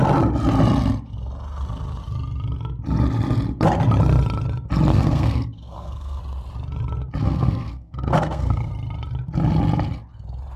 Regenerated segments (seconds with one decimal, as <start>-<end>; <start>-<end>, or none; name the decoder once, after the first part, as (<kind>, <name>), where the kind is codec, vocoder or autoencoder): 4.9-6.2 (codec, SNAC); 7.2-8.7